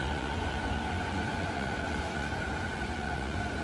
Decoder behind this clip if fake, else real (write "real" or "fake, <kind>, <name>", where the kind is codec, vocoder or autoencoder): fake, vocoder, Vocos